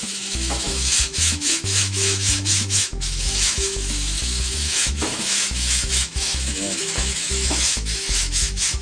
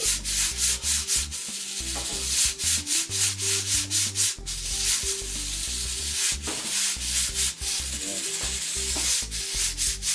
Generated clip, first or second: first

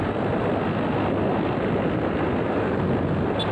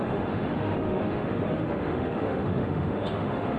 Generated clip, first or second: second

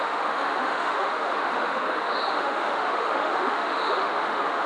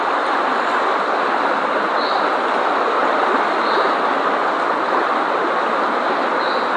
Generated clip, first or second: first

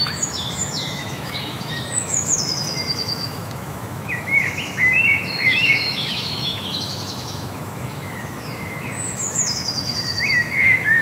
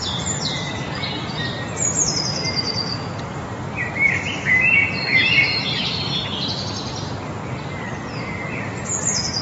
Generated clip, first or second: first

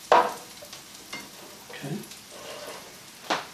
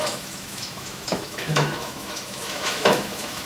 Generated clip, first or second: second